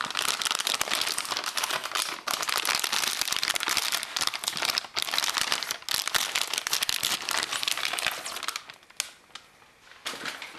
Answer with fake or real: real